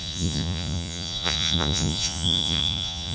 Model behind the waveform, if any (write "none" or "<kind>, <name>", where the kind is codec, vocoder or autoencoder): vocoder, Vocos